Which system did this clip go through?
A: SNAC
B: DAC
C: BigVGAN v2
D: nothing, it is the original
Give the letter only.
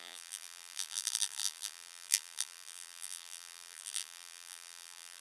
C